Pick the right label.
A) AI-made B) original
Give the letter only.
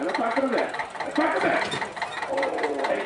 B